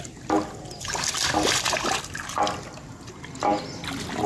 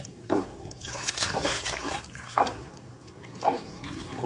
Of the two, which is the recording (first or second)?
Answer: first